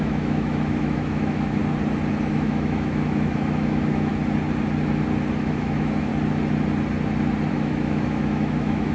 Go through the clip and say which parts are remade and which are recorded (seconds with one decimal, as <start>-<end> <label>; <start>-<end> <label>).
0.0-1.6 remade; 1.6-2.3 recorded; 2.3-4.1 remade; 4.1-5.4 recorded; 5.4-6.1 remade; 6.1-7.5 recorded; 7.5-8.9 remade